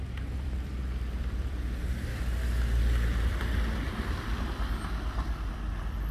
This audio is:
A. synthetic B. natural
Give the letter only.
A